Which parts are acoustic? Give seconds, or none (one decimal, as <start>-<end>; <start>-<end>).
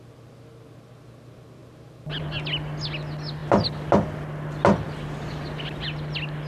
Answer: 0.0-6.5